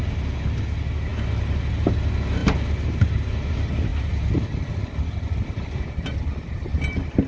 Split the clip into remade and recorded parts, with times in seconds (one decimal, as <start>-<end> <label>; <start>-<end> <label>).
0.0-7.3 recorded